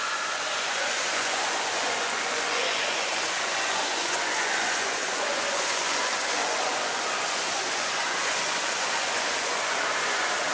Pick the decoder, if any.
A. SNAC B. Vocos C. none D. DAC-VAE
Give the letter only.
B